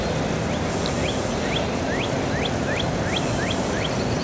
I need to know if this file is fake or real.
real